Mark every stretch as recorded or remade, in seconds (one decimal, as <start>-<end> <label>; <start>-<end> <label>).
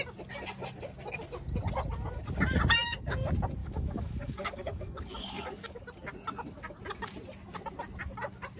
0.0-3.6 recorded; 3.6-5.8 remade; 5.8-8.6 recorded